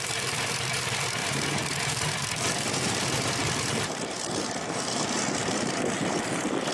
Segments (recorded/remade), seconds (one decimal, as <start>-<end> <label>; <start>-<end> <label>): 0.0-6.7 remade